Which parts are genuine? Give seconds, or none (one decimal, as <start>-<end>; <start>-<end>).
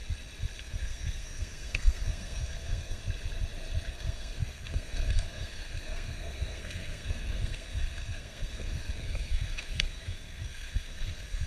0.0-0.6; 3.0-3.9